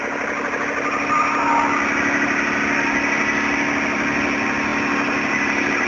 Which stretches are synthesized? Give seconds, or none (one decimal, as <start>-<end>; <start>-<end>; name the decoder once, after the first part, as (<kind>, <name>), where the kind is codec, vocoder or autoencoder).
none